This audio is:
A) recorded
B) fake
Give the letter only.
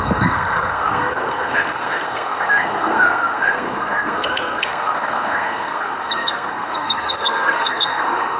B